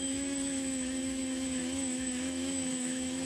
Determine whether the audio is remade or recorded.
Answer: remade